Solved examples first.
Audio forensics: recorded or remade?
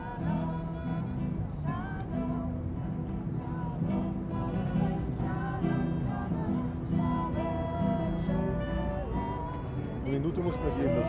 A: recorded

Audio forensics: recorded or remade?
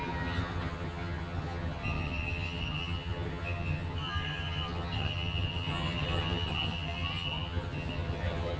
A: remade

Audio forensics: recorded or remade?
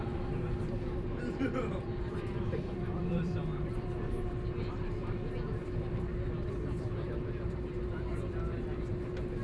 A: remade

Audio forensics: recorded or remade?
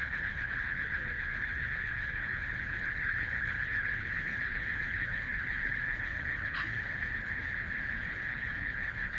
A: remade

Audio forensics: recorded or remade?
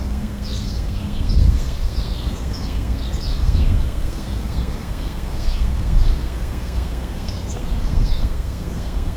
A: remade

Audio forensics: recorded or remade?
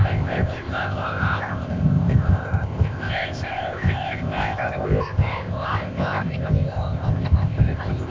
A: remade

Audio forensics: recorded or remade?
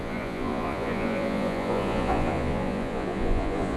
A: remade